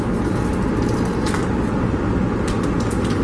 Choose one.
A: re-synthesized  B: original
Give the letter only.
B